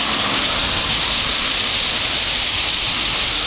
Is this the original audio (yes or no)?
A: yes